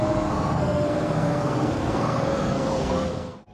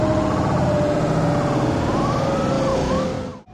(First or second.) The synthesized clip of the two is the first